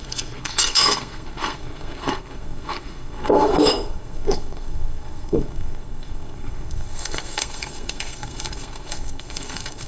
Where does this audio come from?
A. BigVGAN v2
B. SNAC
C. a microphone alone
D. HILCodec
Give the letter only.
B